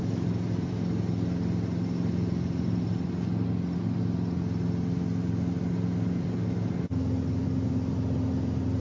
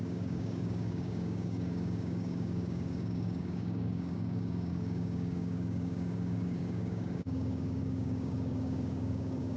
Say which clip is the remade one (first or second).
second